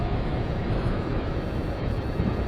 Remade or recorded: remade